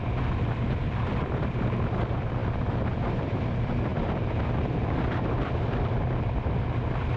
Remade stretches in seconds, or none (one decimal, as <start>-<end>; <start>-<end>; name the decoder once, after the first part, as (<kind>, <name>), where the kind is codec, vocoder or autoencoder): 0.0-2.4 (vocoder, BigVGAN v2); 3.2-7.2